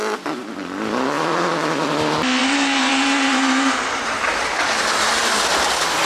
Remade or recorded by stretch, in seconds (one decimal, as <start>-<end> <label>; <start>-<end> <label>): 0.0-2.4 recorded; 2.4-4.8 remade; 4.8-6.0 recorded